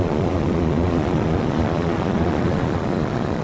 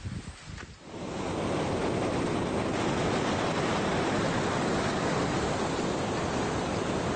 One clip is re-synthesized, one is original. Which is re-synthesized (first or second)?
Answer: first